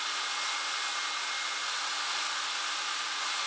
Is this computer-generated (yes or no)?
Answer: no